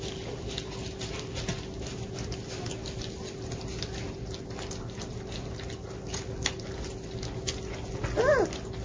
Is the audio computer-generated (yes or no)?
no